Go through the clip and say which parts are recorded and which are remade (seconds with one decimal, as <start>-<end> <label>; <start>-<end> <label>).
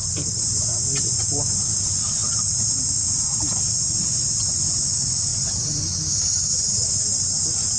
0.0-5.3 recorded; 5.3-5.8 remade; 5.8-7.8 recorded